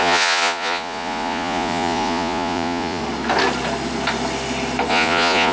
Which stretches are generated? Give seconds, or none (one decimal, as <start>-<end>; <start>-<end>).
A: 0.0-3.0; 4.9-5.5